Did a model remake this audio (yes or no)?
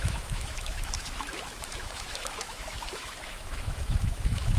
yes